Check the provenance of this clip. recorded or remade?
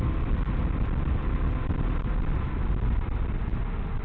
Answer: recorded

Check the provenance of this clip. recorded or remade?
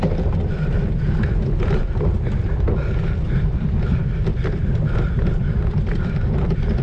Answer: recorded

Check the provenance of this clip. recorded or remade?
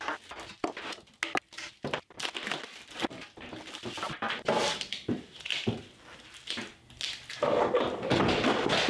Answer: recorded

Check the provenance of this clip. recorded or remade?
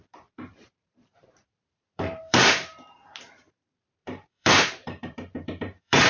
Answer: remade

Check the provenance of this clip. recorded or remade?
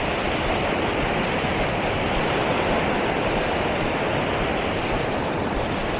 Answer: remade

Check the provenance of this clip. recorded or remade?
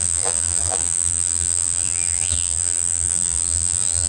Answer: remade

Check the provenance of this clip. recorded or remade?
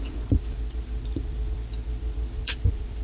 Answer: remade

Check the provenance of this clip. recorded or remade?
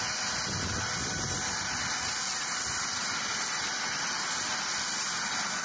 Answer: recorded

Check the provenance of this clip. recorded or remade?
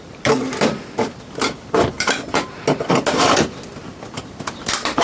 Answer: remade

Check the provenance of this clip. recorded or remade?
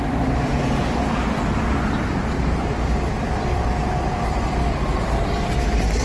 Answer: recorded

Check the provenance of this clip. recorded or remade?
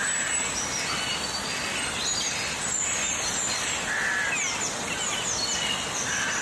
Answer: recorded